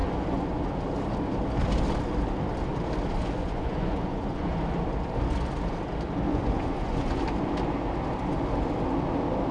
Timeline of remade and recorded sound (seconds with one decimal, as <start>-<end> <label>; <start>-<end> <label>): 0.0-0.6 remade; 0.6-3.2 recorded; 3.2-4.6 remade; 4.6-6.3 recorded; 6.3-7.2 remade; 7.2-9.5 recorded